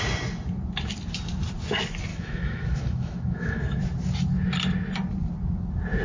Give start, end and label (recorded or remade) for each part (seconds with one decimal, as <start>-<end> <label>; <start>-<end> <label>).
0.0-2.1 recorded; 2.1-3.8 remade; 3.8-6.0 recorded